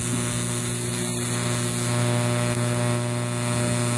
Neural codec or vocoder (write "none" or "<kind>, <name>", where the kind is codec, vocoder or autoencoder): none